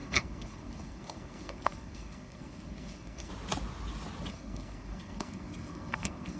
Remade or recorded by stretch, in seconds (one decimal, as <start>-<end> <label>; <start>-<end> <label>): 0.0-3.3 remade; 3.3-4.3 recorded; 4.3-6.4 remade